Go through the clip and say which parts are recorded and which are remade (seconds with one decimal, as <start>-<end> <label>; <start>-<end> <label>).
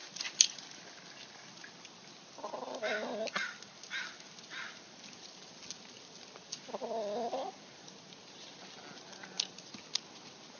0.0-10.6 recorded